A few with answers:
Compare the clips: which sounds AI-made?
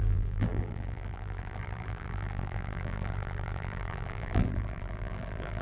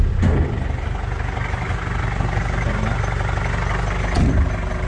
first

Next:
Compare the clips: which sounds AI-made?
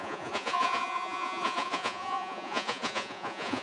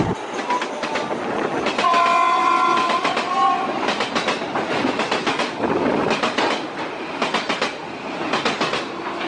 first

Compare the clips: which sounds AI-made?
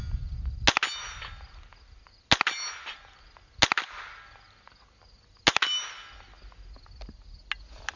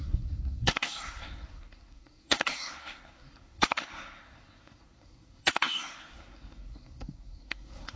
second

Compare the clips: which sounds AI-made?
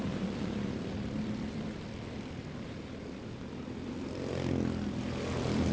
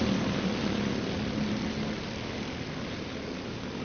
first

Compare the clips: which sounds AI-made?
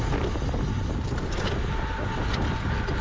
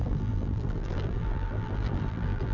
second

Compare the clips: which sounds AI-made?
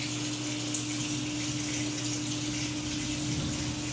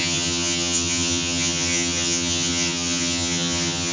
second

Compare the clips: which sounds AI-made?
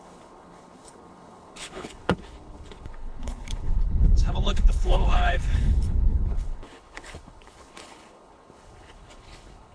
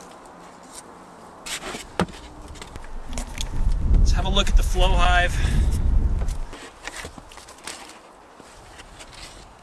first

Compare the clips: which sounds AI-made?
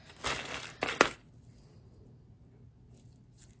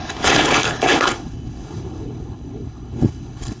second